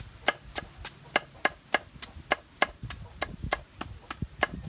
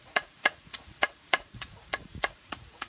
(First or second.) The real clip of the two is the first